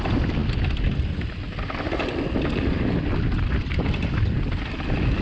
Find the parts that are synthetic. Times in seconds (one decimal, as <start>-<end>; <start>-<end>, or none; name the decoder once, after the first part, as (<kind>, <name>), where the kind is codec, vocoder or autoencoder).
none